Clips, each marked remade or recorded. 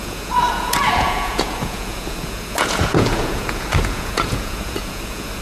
remade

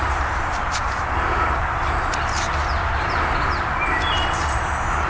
remade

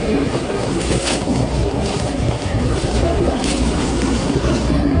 remade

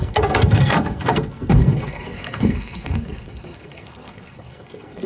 remade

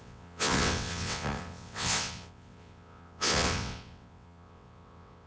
remade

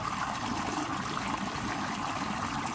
recorded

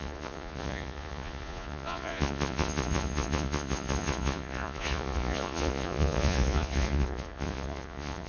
remade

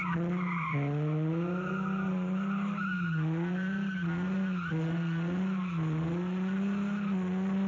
recorded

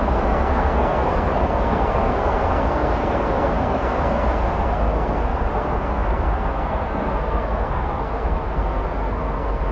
remade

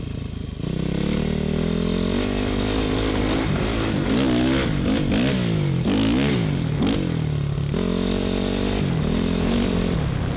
recorded